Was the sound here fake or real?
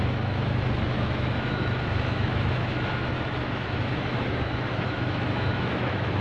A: fake